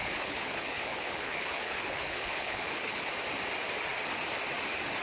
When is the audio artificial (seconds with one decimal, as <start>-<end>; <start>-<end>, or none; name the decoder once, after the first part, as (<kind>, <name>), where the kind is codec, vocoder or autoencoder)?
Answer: 0.0-3.0 (codec, HILCodec)